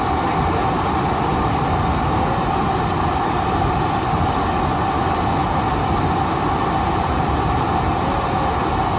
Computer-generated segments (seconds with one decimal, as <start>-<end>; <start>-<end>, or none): none